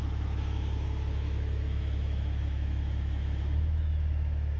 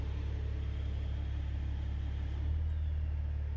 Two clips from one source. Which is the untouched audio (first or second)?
second